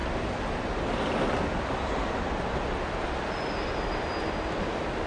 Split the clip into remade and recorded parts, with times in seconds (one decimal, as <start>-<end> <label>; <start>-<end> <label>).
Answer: 0.0-5.1 recorded